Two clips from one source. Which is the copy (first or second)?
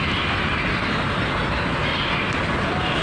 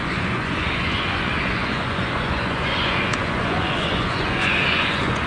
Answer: second